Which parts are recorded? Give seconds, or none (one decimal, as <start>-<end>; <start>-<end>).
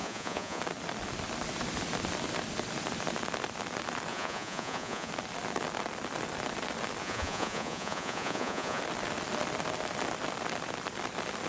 0.6-4.1; 5.1-7.0; 8.8-11.5